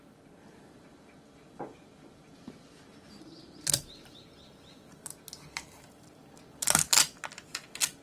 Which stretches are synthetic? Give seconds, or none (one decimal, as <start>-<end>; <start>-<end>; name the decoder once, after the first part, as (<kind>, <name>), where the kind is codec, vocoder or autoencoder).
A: 0.4-4.3 (vocoder, BigVGAN v2); 6.2-7.0

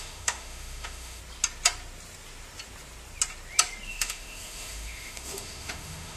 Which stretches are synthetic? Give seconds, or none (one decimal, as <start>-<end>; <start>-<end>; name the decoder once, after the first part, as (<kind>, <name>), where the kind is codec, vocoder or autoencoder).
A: 0.0-1.2 (autoencoder, DAC-VAE); 3.9-6.2

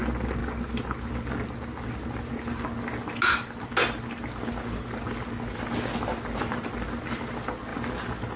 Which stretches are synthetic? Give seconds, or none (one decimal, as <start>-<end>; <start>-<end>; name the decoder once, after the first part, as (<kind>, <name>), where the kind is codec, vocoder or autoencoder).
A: none

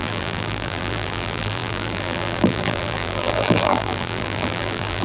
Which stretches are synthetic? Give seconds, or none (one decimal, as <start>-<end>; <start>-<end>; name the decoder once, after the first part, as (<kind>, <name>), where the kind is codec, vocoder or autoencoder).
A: 0.0-5.0 (vocoder, BigVGAN v2)